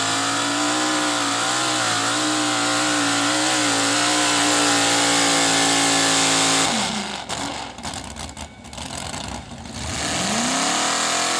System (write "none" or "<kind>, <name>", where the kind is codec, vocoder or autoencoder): none